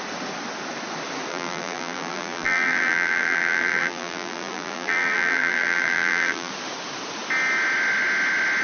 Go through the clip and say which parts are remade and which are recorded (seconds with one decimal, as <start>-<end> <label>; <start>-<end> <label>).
0.0-1.3 recorded; 1.3-6.5 remade; 6.5-8.6 recorded